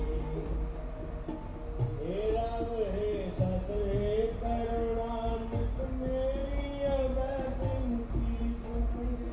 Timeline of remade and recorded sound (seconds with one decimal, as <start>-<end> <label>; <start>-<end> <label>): 0.0-9.3 recorded